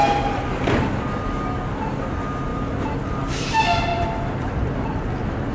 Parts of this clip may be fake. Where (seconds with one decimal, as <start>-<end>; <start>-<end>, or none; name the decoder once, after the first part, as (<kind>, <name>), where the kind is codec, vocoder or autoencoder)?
none